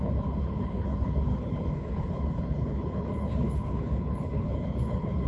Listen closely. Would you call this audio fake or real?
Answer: fake